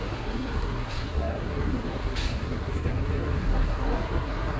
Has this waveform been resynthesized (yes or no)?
yes